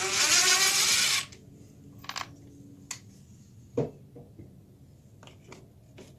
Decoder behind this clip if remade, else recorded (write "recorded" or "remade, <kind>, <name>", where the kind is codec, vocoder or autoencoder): recorded